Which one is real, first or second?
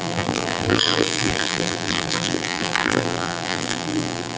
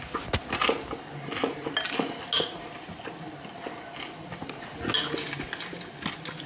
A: second